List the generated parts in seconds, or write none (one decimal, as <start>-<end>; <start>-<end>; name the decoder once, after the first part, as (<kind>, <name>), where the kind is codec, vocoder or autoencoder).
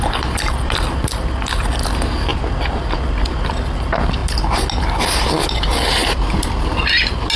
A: 6.0-6.9 (vocoder, BigVGAN v2)